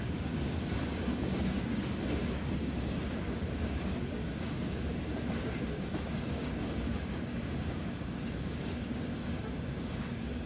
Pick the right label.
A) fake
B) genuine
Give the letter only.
A